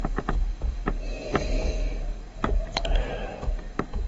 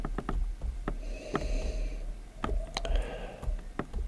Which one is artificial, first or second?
first